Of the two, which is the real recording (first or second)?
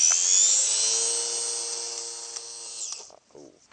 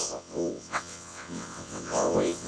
first